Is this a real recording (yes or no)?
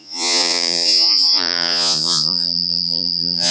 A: no